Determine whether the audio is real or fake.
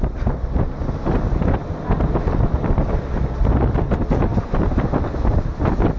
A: real